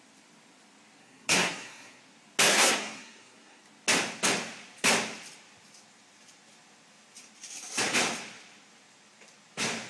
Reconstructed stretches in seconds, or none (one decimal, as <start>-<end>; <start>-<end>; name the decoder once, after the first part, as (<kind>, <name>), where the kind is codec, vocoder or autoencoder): 1.0-2.0 (codec, SNAC); 2.5-3.6